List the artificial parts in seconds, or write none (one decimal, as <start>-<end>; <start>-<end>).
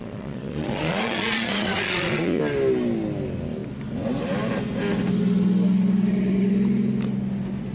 0.0-2.4